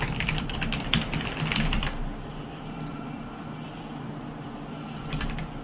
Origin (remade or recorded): remade